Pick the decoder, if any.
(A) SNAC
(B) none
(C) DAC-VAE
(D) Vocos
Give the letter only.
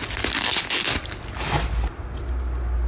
B